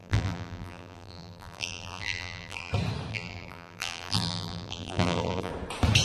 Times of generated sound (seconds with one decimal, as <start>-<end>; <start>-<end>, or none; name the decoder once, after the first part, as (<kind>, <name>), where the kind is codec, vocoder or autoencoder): 0.0-2.7 (vocoder, BigVGAN v2); 3.1-5.5